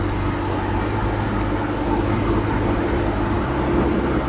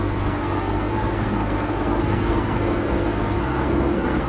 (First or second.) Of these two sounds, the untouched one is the first